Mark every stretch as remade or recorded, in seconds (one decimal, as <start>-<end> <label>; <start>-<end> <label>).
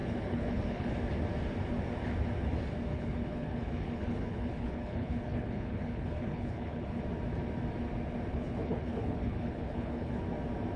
0.0-0.9 remade; 0.9-2.9 recorded; 2.9-7.0 remade; 7.0-8.3 recorded; 8.3-10.2 remade; 10.2-10.8 recorded